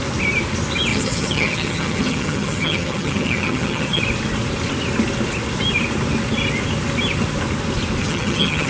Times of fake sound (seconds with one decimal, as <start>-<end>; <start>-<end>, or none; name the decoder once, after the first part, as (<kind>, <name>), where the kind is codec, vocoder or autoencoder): 0.9-4.0 (vocoder, HiFi-GAN); 8.0-8.7